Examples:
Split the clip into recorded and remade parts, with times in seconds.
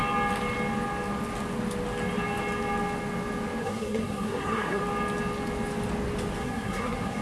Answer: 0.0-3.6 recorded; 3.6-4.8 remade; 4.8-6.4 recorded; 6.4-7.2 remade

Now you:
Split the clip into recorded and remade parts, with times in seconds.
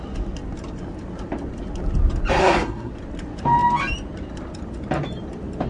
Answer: 0.0-2.4 recorded; 2.4-2.9 remade; 2.9-5.7 recorded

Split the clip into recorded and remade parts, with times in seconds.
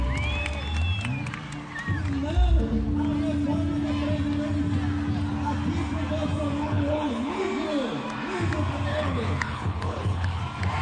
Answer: 0.0-6.6 recorded; 6.6-7.4 remade; 7.4-8.9 recorded; 8.9-10.4 remade; 10.4-10.8 recorded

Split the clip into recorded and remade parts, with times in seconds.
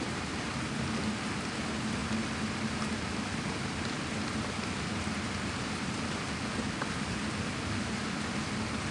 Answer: 0.0-8.9 recorded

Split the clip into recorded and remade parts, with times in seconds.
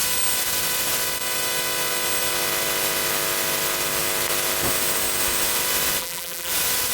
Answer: 0.0-6.0 recorded; 6.0-6.5 remade; 6.5-6.9 recorded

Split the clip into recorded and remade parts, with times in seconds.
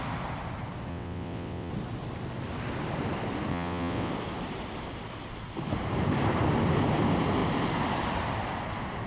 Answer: 0.0-0.9 recorded; 0.9-1.7 remade; 1.7-3.5 recorded; 3.5-4.1 remade; 4.1-9.1 recorded